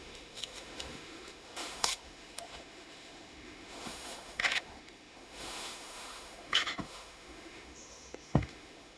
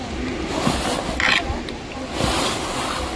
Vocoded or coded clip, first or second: first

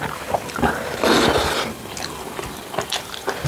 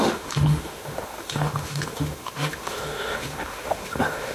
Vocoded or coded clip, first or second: second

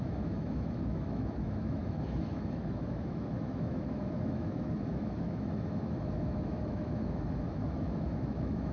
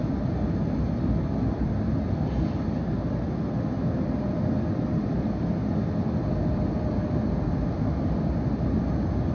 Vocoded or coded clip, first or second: first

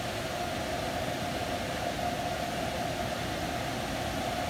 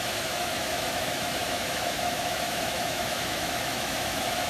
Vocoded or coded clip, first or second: second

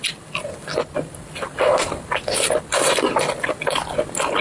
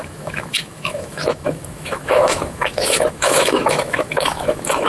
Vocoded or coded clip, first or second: second